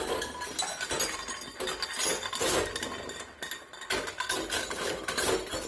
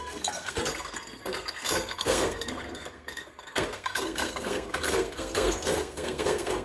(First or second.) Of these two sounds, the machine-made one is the second